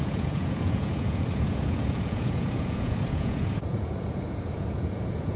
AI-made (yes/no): yes